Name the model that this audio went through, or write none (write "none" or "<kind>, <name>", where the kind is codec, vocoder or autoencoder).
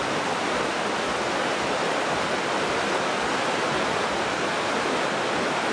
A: none